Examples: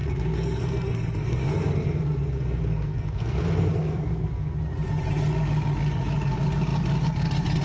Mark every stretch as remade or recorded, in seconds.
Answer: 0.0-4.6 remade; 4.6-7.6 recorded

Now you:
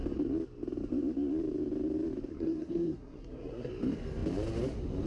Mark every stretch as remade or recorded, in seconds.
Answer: 0.0-2.3 recorded; 2.3-3.7 remade; 3.7-5.1 recorded